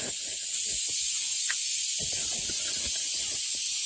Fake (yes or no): yes